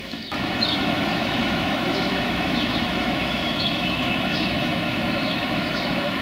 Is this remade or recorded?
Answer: remade